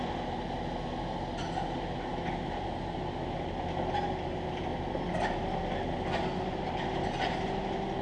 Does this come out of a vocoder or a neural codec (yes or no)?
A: no